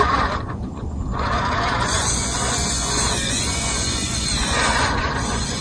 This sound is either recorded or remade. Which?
remade